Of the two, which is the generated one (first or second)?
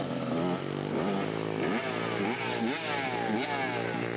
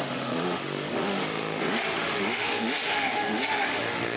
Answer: second